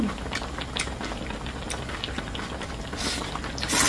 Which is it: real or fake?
real